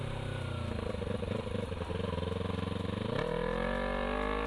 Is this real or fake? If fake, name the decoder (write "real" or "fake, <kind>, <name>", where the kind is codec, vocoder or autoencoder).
real